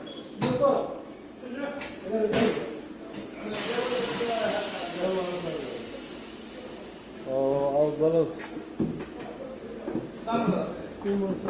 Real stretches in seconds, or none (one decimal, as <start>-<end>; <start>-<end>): 0.0-2.2; 2.9-11.5